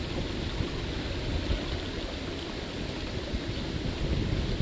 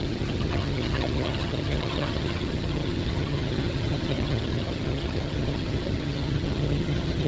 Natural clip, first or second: first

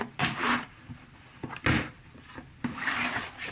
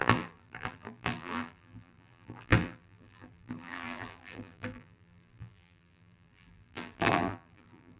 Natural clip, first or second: first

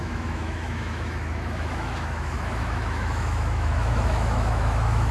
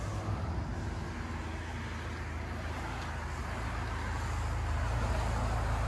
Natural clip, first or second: second